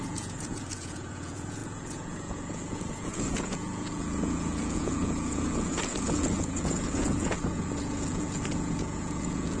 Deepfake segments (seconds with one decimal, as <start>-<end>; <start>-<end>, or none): 0.0-9.6